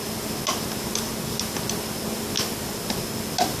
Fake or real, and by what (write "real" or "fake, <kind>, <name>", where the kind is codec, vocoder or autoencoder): real